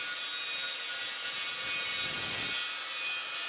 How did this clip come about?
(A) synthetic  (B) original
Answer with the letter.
B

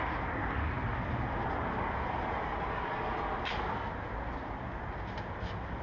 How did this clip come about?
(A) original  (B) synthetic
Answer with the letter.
A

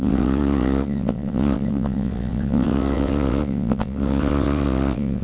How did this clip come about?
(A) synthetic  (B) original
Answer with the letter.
A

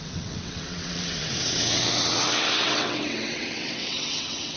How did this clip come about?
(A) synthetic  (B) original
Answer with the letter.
A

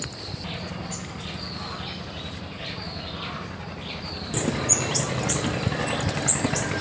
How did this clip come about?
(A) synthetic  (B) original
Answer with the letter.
B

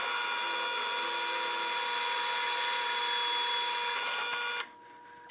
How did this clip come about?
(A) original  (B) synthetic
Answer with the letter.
A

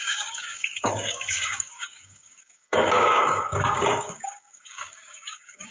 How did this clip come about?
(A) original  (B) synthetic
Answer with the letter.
B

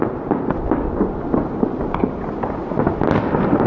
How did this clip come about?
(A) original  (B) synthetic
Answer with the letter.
A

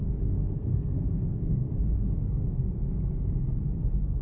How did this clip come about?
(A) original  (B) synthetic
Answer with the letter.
B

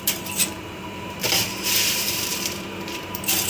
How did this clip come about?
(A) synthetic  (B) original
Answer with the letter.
A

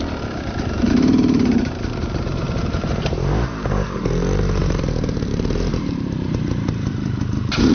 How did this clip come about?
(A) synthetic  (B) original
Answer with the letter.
A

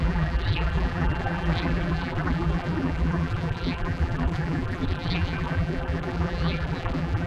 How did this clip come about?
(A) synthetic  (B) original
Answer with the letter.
A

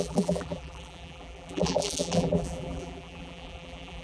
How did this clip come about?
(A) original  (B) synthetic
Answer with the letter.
B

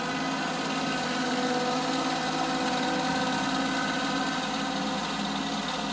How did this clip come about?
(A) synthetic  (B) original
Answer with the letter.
B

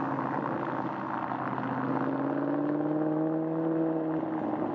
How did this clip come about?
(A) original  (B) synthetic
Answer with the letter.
A